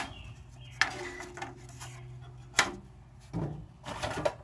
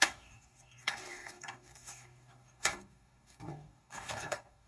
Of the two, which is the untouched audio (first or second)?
first